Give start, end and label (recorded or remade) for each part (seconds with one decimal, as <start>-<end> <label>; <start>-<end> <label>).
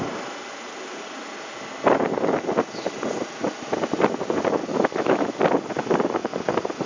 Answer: 0.0-4.7 recorded; 4.7-5.4 remade; 5.4-6.9 recorded